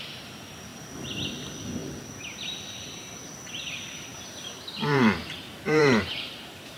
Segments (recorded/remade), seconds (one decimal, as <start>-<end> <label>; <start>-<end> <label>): 0.0-4.1 recorded; 4.1-6.8 remade